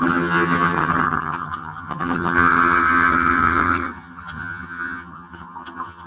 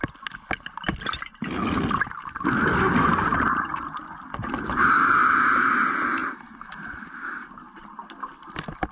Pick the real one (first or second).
second